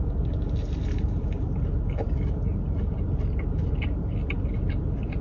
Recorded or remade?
remade